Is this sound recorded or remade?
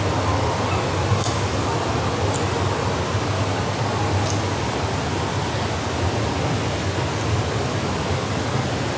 recorded